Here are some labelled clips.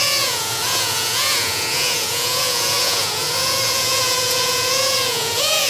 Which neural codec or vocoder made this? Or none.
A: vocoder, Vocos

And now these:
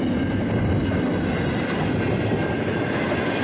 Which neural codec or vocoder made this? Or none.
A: none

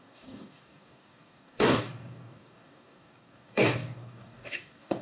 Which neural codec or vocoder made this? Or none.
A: codec, DAC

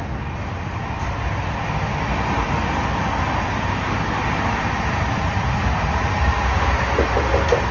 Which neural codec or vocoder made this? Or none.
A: none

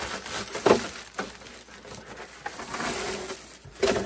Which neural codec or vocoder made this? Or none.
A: none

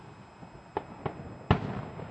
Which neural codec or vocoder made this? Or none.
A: none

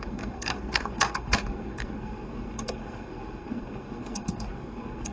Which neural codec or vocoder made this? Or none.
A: codec, SNAC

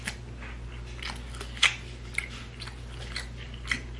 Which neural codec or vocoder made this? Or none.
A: none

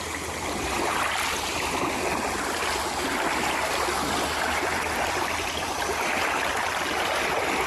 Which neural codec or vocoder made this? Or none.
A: none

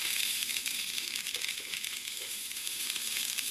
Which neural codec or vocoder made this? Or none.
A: autoencoder, DAC-VAE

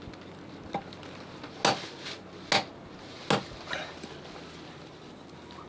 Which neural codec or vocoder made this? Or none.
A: none